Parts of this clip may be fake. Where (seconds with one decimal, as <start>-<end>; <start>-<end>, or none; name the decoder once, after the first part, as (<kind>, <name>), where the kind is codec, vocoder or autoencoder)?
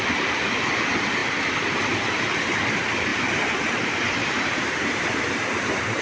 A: 3.1-5.2 (vocoder, BigVGAN v2)